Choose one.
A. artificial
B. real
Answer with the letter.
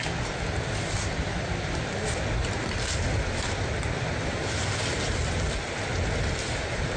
B